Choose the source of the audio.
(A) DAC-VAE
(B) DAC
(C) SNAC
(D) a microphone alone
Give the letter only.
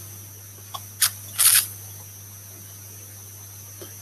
D